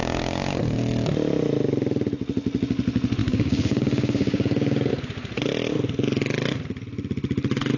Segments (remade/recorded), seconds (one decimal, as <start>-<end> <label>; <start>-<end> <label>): 0.0-0.6 remade; 0.6-3.2 recorded; 3.2-4.9 remade; 4.9-7.8 recorded